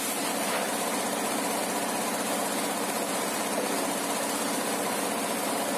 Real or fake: real